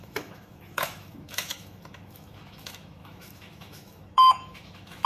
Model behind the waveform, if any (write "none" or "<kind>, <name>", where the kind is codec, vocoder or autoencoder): autoencoder, DAC-VAE